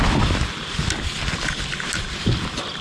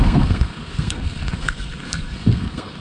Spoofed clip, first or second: second